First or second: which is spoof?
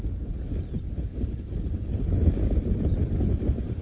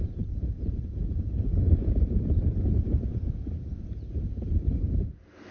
second